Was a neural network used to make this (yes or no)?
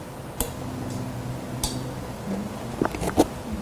no